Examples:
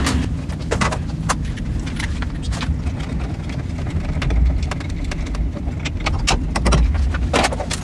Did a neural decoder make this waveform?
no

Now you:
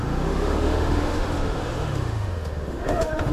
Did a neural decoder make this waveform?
yes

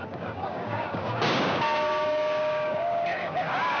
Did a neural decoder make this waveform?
yes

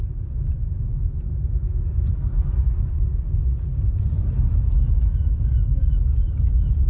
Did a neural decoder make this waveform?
yes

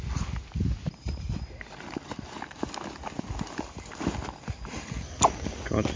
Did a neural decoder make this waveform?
no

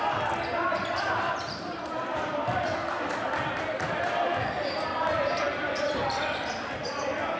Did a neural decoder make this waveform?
yes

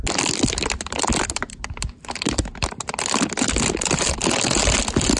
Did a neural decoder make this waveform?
no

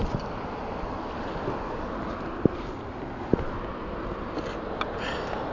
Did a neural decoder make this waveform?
no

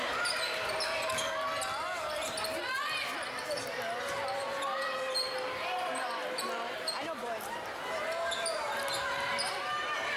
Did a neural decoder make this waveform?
no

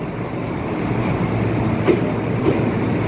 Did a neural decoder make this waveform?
no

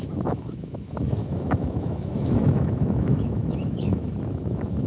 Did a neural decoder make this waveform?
yes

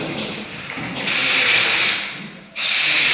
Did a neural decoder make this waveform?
yes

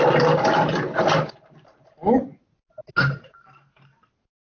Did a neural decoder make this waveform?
no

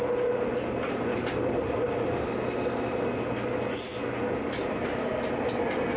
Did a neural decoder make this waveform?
no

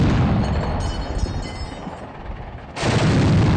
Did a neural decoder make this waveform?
no